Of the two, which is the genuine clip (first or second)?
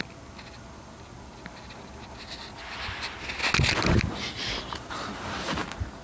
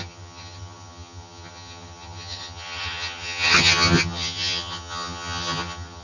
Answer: first